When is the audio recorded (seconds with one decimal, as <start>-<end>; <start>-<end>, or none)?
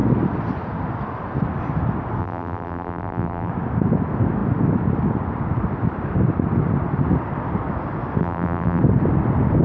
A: 0.0-2.2; 3.5-8.2; 8.8-9.6